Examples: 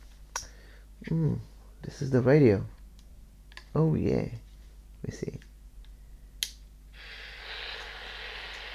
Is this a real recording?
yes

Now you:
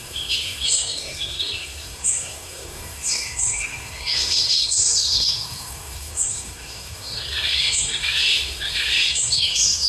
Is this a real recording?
no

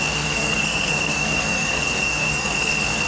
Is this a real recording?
no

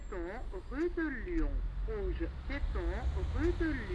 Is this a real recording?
yes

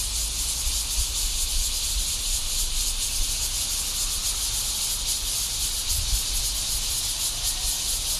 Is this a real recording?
yes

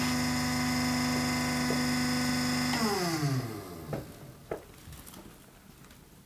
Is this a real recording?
yes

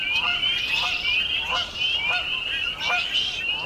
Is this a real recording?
yes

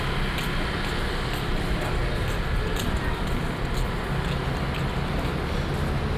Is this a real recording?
yes